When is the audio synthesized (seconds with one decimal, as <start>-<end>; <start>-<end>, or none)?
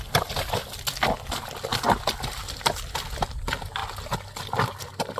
none